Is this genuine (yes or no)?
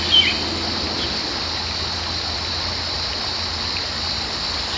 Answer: yes